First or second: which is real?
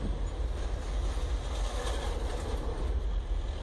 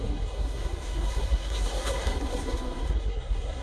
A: first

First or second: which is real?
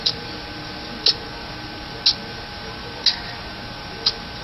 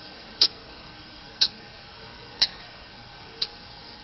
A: first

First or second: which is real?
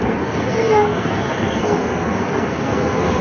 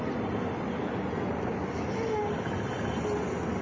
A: second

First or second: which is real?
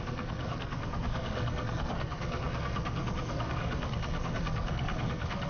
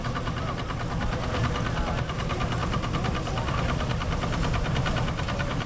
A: second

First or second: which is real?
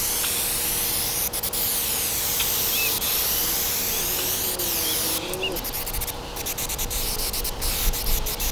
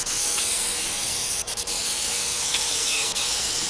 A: first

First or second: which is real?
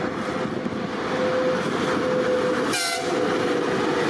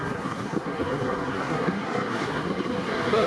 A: first